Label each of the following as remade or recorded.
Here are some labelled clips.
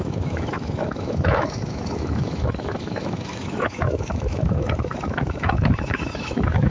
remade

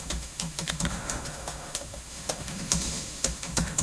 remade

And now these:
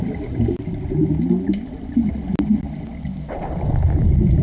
recorded